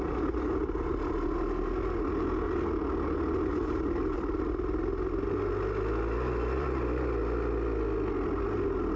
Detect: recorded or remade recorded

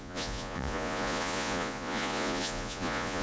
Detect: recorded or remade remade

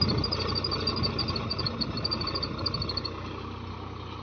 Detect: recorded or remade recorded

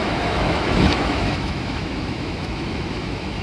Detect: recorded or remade remade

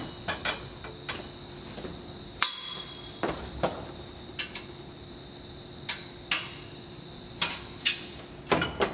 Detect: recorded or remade recorded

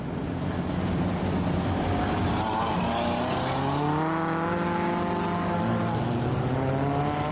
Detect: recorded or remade recorded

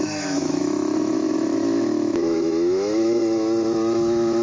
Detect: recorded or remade remade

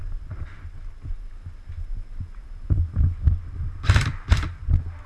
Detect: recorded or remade recorded